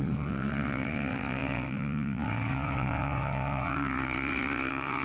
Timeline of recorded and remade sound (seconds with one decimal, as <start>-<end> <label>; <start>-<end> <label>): 0.0-5.0 remade